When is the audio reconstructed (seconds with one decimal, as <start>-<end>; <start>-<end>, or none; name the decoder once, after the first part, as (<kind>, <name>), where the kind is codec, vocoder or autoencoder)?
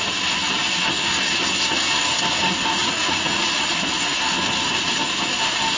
2.8-3.7 (vocoder, Vocos)